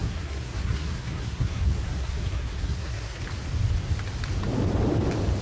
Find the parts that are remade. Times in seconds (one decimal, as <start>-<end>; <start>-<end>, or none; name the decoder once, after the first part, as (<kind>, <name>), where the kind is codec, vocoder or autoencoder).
0.0-3.2 (codec, SNAC)